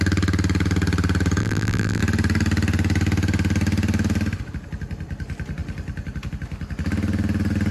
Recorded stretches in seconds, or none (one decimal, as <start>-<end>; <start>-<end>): 0.0-1.4; 2.0-7.7